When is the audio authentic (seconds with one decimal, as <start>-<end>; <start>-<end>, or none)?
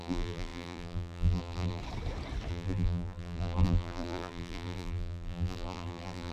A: 1.8-2.5